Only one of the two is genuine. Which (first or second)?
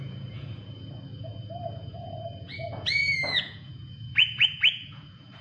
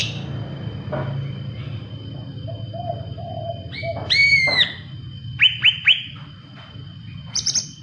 second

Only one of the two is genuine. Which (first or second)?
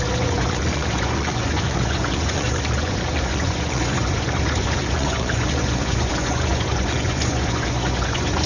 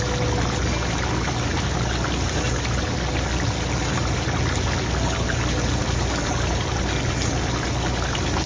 second